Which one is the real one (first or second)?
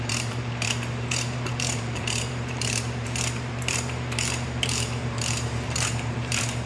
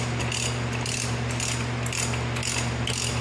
second